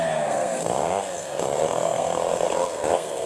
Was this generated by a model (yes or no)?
yes